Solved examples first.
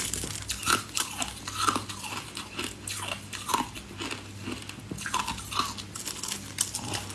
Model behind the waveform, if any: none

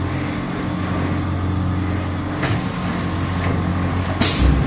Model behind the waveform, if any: none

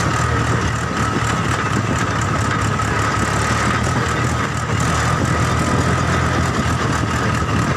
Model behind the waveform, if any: none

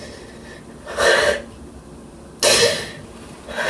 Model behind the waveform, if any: none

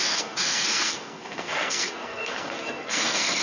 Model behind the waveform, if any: codec, SNAC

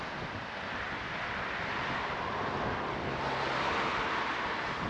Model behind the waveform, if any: none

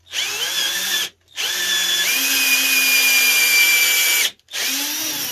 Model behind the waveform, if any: none